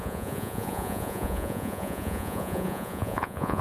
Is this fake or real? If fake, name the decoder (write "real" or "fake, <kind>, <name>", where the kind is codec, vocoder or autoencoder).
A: fake, vocoder, Vocos